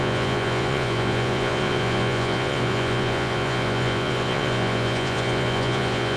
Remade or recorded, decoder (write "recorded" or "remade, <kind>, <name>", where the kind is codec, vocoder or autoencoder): remade, vocoder, Vocos